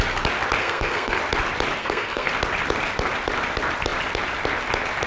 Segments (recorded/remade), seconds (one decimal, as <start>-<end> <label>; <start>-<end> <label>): 0.0-0.6 recorded; 0.6-1.2 remade; 1.2-1.8 recorded; 1.8-2.3 remade; 2.3-5.1 recorded